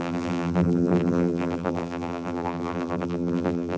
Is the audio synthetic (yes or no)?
yes